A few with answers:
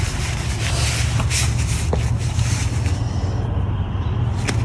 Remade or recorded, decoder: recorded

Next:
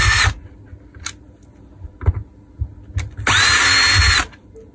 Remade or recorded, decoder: recorded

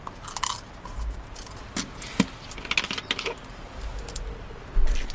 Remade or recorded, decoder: recorded